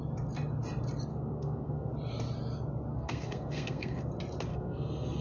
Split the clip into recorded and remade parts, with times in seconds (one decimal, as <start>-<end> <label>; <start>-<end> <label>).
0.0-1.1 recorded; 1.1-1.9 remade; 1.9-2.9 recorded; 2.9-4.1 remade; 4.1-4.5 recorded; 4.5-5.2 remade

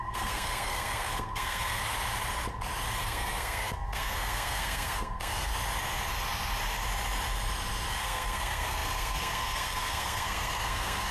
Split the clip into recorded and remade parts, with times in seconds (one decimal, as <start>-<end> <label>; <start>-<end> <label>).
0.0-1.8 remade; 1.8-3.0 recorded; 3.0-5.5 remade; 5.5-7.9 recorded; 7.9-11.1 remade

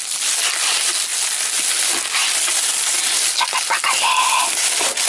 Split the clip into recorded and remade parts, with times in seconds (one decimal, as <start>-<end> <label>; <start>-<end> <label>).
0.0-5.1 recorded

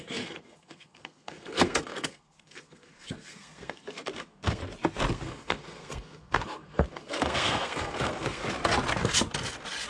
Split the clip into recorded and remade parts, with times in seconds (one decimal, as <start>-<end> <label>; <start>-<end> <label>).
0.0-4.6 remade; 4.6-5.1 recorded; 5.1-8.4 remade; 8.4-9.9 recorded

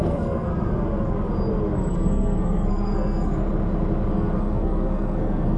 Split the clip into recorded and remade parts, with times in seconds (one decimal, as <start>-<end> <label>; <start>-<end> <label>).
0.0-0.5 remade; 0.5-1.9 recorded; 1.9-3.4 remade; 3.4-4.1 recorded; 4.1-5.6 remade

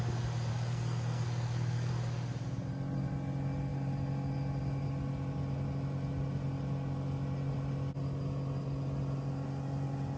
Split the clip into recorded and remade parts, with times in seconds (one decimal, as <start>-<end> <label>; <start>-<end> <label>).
0.0-0.5 recorded; 0.5-1.9 remade; 1.9-10.2 recorded

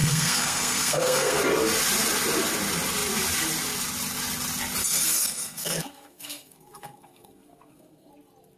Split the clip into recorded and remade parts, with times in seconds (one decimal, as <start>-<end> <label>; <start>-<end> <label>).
0.0-1.4 remade; 1.4-4.8 recorded; 4.8-8.1 remade; 8.1-8.6 recorded

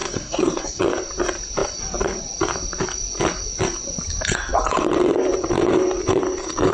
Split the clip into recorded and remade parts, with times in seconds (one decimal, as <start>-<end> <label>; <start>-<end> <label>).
0.0-0.8 remade; 0.8-6.7 recorded